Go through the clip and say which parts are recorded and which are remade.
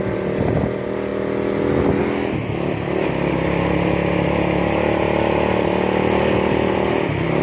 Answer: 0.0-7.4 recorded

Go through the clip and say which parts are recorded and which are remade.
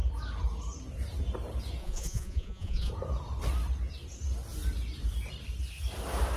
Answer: 0.0-1.8 recorded; 1.8-2.9 remade; 2.9-6.4 recorded